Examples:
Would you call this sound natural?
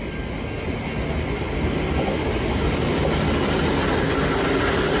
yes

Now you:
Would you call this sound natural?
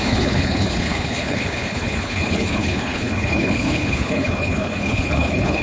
no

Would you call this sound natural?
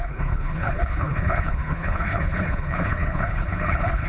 no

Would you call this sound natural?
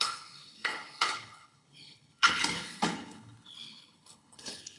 no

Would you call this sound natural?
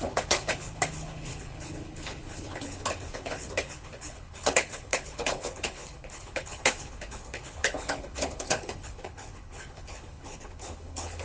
no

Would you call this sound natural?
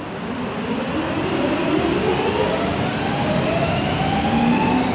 yes